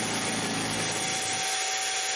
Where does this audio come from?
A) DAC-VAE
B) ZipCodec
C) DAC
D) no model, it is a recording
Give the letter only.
D